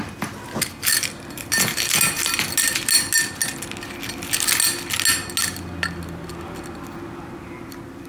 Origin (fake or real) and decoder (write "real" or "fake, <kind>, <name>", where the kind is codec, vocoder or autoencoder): real